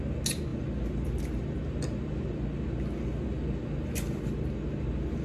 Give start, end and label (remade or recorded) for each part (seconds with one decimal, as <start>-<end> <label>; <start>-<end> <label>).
0.0-5.2 recorded